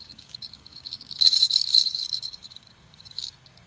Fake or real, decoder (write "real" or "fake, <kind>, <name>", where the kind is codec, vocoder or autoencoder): fake, codec, DAC